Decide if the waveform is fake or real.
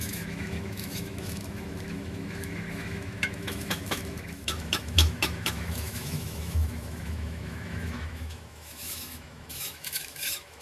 fake